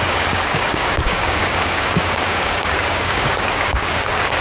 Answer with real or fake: fake